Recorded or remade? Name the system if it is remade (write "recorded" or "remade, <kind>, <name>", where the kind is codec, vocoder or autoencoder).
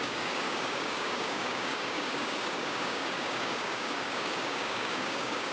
remade, codec, DAC